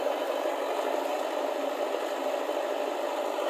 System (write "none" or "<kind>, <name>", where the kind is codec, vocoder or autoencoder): none